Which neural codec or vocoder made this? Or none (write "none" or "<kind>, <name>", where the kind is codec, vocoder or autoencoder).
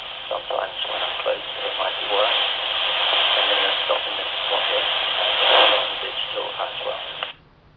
none